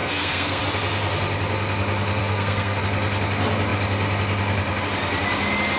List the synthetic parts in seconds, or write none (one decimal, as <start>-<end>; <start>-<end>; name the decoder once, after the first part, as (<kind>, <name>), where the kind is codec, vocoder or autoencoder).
0.0-0.6 (codec, SNAC); 2.2-2.8